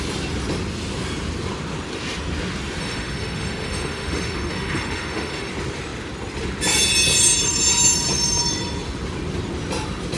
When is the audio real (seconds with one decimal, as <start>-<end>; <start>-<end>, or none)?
0.0-2.8; 5.5-10.2